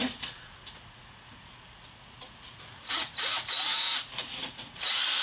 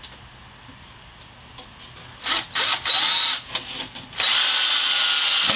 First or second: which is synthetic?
first